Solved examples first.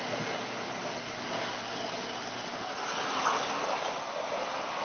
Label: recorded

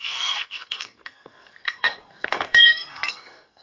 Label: remade